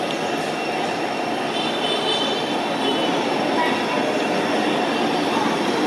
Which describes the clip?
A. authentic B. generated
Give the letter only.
A